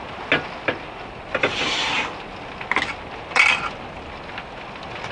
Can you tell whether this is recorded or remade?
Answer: recorded